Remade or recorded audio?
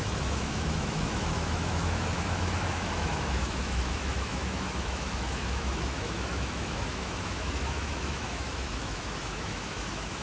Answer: remade